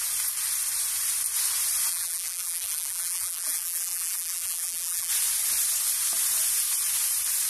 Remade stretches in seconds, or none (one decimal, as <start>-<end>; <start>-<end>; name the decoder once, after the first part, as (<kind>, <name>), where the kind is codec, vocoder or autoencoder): 1.9-5.1 (vocoder, BigVGAN v2)